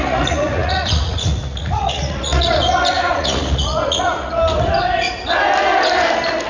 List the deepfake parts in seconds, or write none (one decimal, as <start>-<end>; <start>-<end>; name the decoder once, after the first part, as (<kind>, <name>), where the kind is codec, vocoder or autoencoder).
0.0-4.4 (vocoder, Vocos)